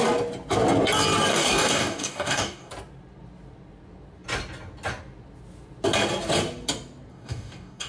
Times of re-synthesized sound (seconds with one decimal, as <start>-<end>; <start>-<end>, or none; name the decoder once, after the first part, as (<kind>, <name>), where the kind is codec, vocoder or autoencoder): 1.3-2.7 (codec, DAC); 7.1-7.9